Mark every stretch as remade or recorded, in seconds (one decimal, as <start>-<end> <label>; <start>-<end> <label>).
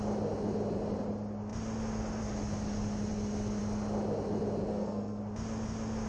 0.0-4.7 recorded; 4.7-5.2 remade; 5.2-6.1 recorded